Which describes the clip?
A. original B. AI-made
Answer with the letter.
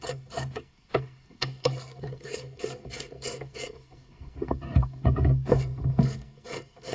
B